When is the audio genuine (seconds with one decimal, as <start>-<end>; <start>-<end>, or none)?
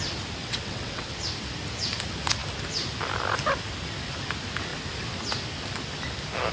0.0-0.4; 1.1-6.5